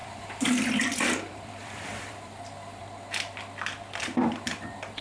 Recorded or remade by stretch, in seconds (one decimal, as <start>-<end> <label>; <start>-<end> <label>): 0.0-2.8 remade; 2.8-4.0 recorded; 4.0-5.0 remade